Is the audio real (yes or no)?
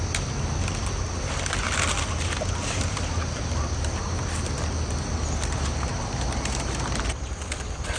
yes